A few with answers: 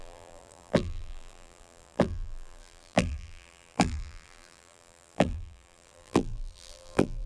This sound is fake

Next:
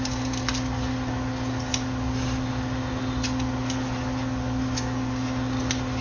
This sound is real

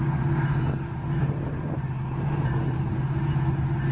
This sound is fake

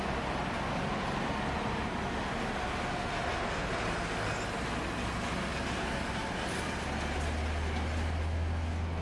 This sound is real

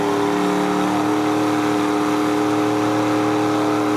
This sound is real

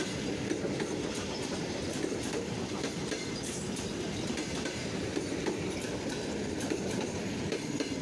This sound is fake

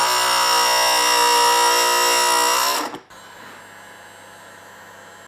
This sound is real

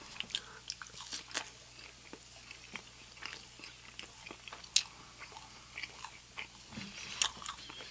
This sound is real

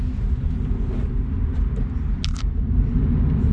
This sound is real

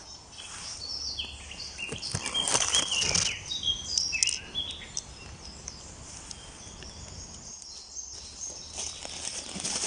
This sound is real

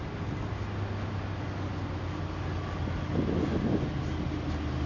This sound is real